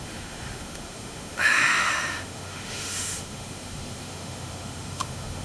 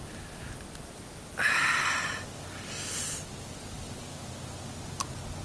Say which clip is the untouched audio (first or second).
second